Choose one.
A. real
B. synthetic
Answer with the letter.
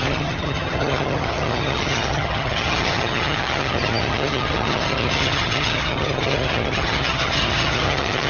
B